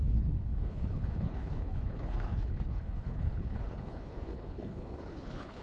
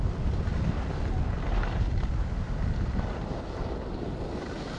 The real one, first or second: second